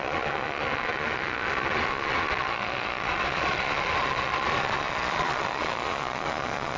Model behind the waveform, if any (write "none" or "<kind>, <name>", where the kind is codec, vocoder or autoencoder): vocoder, Vocos